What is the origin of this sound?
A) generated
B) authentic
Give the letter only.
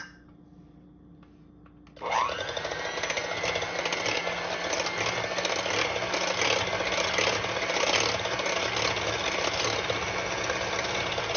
B